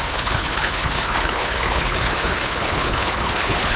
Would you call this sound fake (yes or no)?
yes